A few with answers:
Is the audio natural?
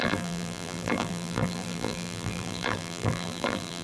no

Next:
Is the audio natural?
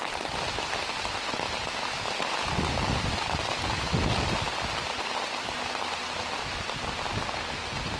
yes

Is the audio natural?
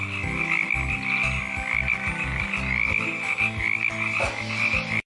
yes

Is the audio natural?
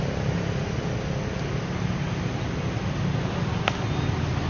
yes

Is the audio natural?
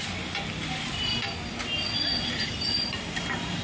yes